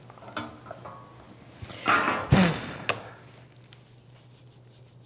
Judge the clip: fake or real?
real